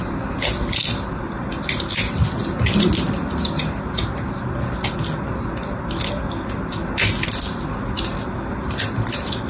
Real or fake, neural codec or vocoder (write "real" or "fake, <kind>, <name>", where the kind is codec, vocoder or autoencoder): real